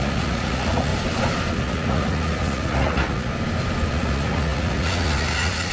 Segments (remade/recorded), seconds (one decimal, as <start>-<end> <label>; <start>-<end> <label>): 0.0-0.9 remade; 0.9-1.5 recorded; 1.5-3.3 remade; 3.3-3.9 recorded; 3.9-5.7 remade